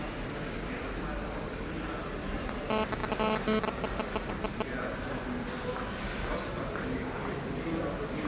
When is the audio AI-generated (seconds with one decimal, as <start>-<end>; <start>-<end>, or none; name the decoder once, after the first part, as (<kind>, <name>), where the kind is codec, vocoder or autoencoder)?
none